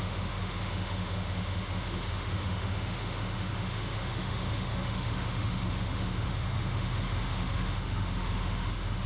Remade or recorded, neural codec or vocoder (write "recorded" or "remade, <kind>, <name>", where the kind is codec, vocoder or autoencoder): remade, autoencoder, DAC-VAE